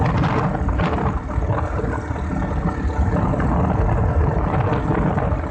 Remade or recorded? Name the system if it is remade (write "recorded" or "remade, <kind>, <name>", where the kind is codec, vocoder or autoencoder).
recorded